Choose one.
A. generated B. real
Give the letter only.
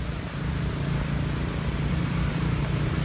B